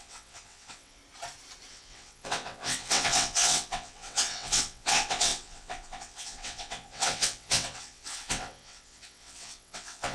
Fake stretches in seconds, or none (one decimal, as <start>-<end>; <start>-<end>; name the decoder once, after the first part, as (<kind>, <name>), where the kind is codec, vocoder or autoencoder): 0.0-1.0 (vocoder, WaveNeXt); 1.7-10.1